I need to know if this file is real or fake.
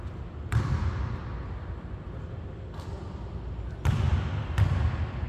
real